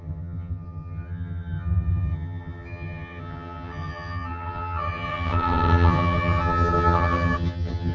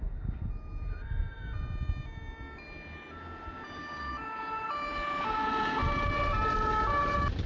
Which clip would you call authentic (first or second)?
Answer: second